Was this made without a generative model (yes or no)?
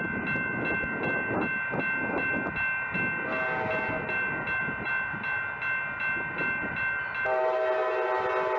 yes